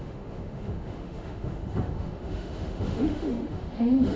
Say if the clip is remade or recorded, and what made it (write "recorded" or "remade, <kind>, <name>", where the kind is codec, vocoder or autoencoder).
remade, autoencoder, DAC-VAE